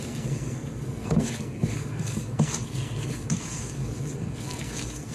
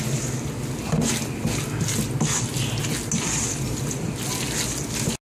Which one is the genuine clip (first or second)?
second